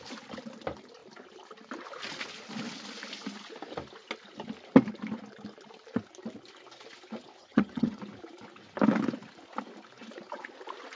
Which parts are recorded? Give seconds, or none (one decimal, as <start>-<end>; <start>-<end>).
0.0-7.4; 8.0-11.0